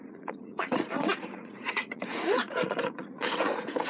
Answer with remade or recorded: remade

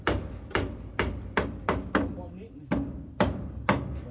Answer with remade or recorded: recorded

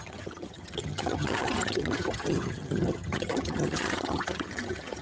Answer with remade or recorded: remade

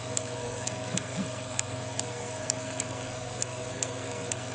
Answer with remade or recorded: remade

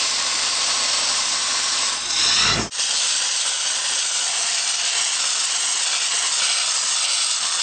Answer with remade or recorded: recorded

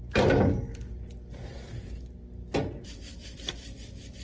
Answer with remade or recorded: recorded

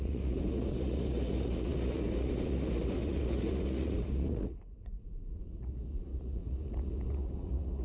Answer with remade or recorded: remade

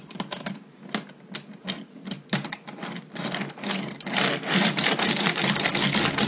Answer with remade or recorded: recorded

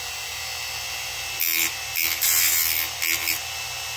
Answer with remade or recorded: recorded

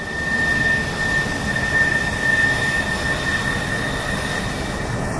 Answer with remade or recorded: recorded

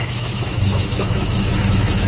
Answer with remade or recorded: remade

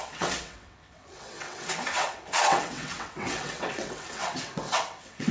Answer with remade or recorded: remade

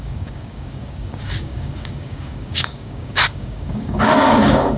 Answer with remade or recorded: remade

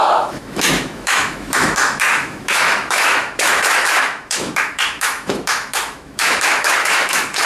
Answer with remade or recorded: remade